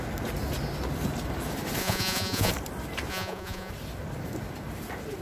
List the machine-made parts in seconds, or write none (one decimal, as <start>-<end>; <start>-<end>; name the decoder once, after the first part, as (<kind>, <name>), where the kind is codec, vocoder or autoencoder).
1.8-2.5 (vocoder, Vocos); 3.1-3.7